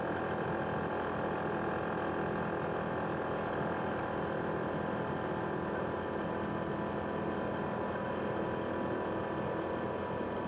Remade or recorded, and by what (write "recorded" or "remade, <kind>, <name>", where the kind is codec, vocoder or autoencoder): recorded